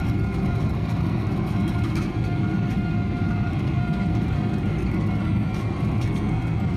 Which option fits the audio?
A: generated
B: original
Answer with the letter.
A